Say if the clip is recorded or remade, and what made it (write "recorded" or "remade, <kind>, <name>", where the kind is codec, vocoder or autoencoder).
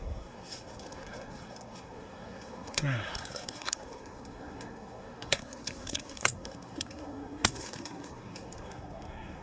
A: remade, codec, SNAC